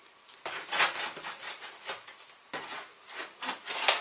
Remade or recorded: recorded